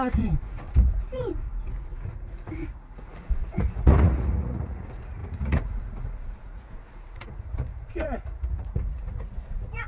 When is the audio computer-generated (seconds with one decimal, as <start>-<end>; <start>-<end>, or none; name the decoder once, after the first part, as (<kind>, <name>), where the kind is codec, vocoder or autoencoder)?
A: 0.0-9.9 (vocoder, Vocos)